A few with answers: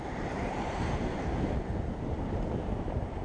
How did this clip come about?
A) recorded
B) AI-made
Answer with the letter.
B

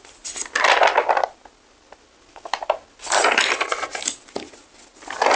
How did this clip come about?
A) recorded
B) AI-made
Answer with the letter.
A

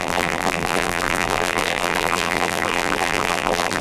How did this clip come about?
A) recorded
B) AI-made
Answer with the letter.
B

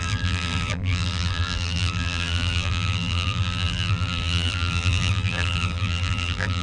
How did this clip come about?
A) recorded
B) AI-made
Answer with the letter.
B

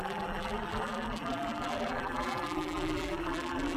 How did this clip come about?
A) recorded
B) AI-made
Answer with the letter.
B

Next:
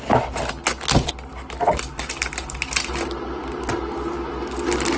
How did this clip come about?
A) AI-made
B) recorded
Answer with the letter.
B